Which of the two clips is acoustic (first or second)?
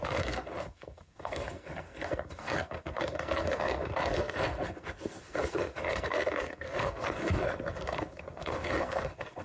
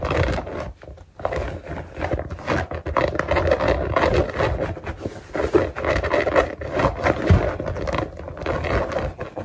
second